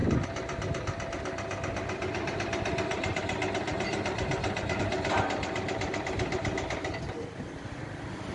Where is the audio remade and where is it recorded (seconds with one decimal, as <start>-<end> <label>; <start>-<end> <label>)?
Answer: 0.0-8.3 recorded